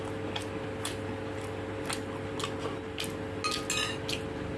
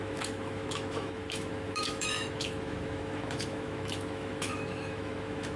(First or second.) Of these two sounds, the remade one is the second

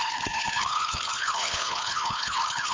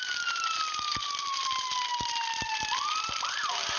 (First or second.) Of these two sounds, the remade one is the first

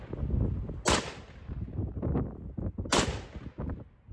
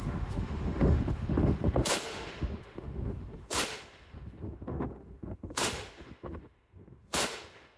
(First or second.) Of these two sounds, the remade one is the second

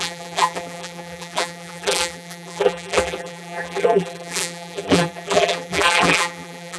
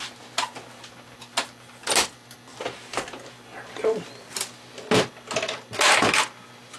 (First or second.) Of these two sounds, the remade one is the first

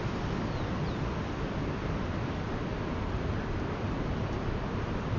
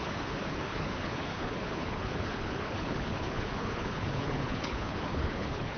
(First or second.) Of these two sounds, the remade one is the second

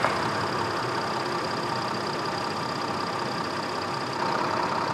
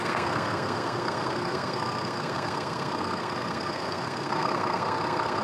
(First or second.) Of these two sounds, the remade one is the second